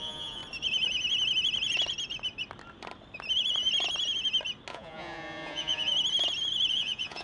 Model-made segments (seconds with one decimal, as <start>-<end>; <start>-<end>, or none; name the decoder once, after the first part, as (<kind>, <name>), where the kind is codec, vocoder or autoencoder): 0.0-0.4 (vocoder, Vocos); 4.7-5.9; 6.7-7.2